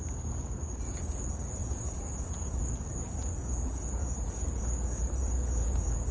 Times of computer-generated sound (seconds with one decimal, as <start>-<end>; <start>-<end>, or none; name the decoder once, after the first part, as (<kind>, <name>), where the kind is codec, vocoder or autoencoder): 1.6-2.6 (vocoder, Vocos); 3.2-6.1